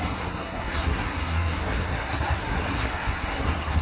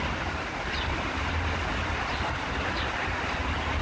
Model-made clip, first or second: first